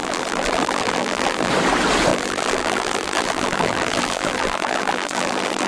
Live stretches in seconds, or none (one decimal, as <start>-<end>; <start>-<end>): 1.5-2.1